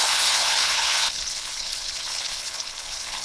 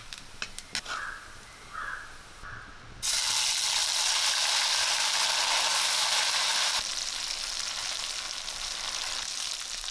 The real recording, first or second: second